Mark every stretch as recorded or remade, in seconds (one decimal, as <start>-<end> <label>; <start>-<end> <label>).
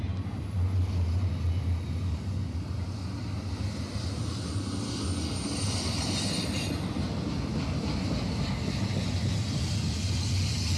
0.0-10.8 recorded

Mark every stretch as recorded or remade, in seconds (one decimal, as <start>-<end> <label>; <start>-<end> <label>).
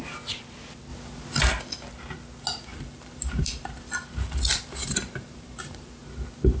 0.0-2.7 recorded; 2.7-3.8 remade; 3.8-4.5 recorded; 4.5-6.0 remade; 6.0-6.6 recorded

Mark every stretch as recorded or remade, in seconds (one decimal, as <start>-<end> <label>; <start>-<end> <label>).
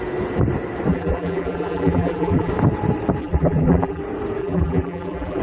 0.0-0.9 recorded; 0.9-2.5 remade; 2.5-3.2 recorded; 3.2-4.0 remade; 4.0-4.4 recorded; 4.4-5.4 remade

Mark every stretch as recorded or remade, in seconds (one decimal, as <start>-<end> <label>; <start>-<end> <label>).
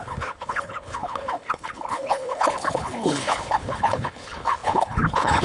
0.0-5.4 remade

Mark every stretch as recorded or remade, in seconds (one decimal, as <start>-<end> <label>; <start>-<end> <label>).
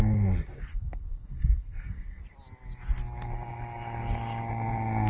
0.0-0.7 recorded; 0.7-2.2 remade; 2.2-5.1 recorded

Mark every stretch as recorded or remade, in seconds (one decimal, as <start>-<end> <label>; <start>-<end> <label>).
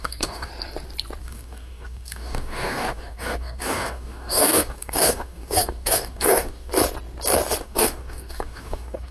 0.0-0.5 remade; 0.5-1.2 recorded; 1.2-6.7 remade; 6.7-7.6 recorded; 7.6-9.1 remade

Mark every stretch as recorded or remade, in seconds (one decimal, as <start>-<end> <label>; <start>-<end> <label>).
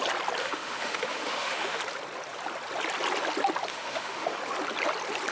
0.0-0.4 recorded; 0.4-1.8 remade; 1.8-3.7 recorded; 3.7-4.4 remade; 4.4-5.3 recorded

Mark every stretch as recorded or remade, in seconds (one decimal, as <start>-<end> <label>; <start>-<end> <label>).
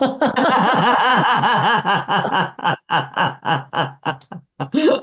0.0-1.1 recorded; 1.1-1.8 remade; 1.8-2.6 recorded; 2.6-4.1 remade; 4.1-5.0 recorded